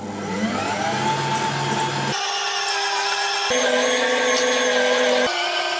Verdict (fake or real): real